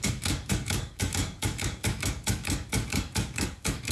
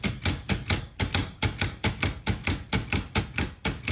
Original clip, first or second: second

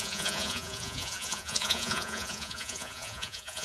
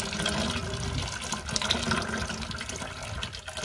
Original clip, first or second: second